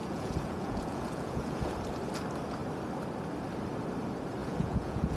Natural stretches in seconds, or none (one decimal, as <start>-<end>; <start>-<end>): 1.7-4.4